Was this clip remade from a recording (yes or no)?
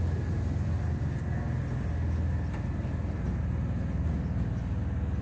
no